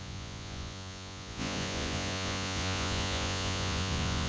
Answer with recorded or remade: remade